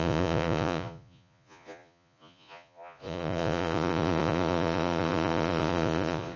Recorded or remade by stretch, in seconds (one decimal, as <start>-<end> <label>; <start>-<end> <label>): 0.0-6.4 remade